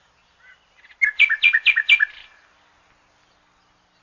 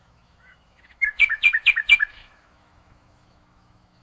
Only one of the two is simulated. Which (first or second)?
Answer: second